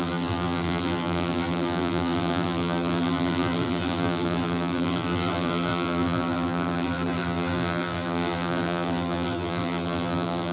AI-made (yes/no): yes